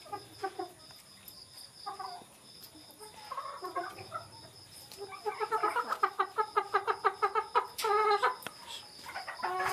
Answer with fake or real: real